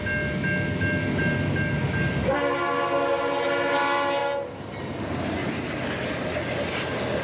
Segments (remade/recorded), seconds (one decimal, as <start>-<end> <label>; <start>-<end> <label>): 0.0-4.2 recorded; 4.2-5.1 remade; 5.1-7.2 recorded